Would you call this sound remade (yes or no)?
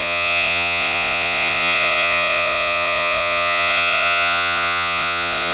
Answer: yes